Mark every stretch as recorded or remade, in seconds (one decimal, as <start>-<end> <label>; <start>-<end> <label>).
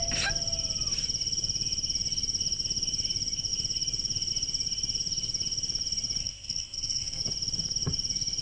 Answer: 0.0-6.2 recorded; 6.2-7.2 remade; 7.2-8.4 recorded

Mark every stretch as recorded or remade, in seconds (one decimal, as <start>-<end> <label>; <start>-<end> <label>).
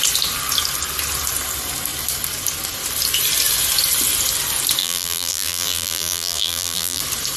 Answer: 0.0-4.8 recorded; 4.8-7.0 remade; 7.0-7.4 recorded